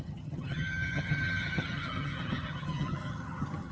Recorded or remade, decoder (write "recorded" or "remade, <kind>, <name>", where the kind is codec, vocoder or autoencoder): remade, vocoder, HiFi-GAN